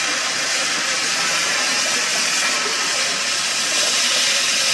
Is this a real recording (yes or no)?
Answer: yes